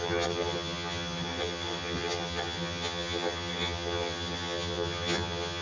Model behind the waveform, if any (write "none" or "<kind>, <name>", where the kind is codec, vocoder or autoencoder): vocoder, HiFi-GAN